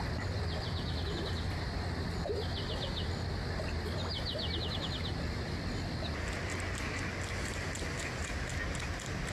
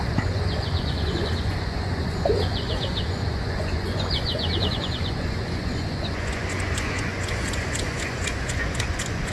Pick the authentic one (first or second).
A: first